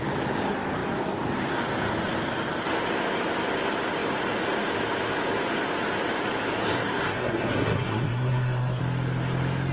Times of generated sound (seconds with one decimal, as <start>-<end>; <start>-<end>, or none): 6.6-8.8